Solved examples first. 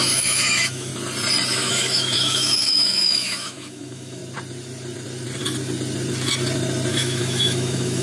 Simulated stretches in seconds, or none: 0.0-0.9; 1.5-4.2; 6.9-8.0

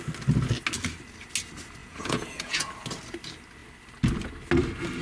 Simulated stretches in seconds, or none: 1.8-2.7

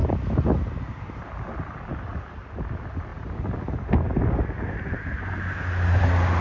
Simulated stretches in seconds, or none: none

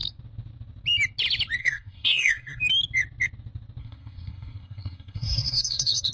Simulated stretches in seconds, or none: 1.6-2.6; 3.8-6.1

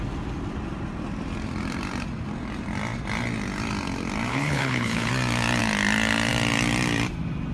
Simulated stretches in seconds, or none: 4.3-5.1